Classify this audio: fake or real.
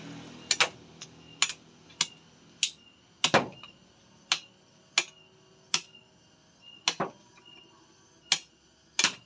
real